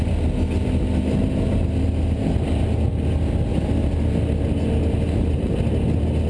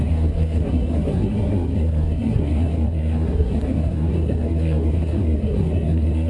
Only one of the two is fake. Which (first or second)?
second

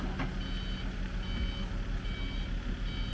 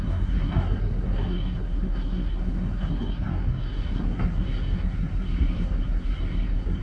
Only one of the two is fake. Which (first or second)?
second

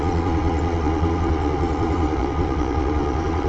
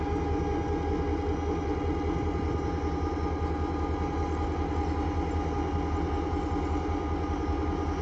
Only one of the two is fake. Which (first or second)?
first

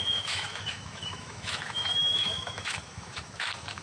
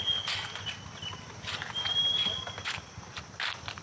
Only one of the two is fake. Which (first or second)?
first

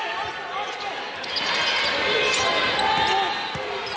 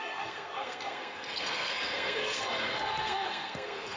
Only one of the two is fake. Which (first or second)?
second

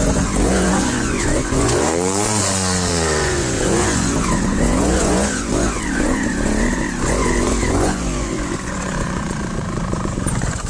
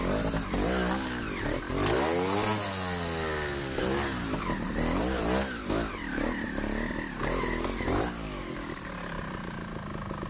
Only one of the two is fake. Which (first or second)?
first